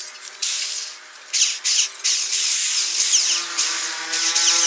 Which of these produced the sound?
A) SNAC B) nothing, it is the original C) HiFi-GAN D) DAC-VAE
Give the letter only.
B